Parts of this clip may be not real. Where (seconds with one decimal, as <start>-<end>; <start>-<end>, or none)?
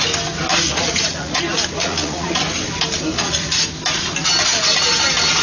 0.5-1.4; 1.8-2.4; 3.1-3.6